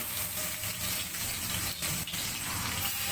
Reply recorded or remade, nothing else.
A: remade